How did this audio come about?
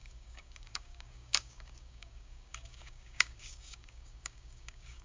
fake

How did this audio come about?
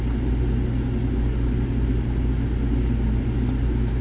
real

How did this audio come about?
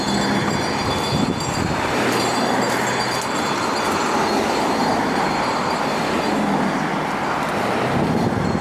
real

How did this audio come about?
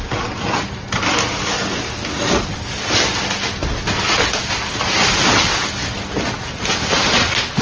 real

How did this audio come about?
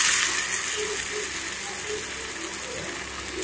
real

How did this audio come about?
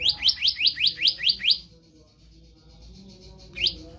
real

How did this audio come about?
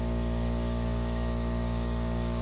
fake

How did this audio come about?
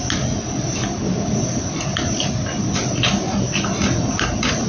real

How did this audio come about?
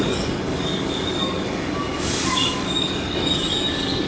fake